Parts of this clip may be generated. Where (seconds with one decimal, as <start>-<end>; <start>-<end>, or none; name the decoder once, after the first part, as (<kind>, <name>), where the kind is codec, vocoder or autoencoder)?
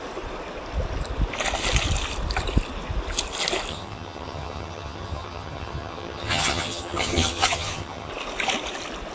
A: 3.7-8.1 (vocoder, HiFi-GAN)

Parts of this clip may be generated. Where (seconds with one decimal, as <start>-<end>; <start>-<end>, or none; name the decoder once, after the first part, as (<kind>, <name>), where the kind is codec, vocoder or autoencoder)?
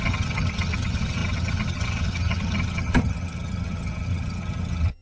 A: 0.0-5.0 (vocoder, HiFi-GAN)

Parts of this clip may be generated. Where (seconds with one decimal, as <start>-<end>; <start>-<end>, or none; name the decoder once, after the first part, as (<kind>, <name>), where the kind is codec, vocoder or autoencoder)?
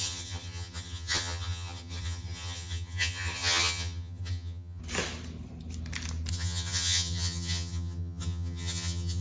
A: 0.0-4.8 (vocoder, HiFi-GAN); 6.3-9.2